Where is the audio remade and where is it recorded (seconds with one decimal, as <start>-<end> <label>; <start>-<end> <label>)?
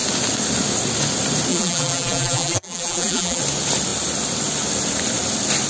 0.0-1.5 recorded; 1.5-3.4 remade; 3.4-5.7 recorded